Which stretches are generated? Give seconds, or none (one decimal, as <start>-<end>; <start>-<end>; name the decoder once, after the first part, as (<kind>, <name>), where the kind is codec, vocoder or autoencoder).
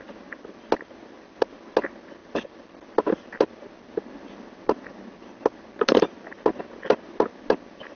none